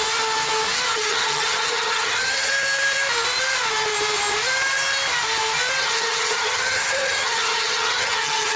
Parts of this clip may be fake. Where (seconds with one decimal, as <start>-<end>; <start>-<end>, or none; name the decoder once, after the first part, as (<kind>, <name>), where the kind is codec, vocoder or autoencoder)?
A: 0.9-2.5 (vocoder, HiFi-GAN); 5.8-8.6